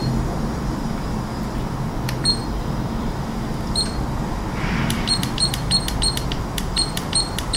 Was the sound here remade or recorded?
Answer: remade